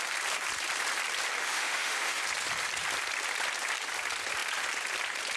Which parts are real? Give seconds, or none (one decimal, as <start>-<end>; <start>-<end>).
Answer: 0.0-1.4; 2.2-5.4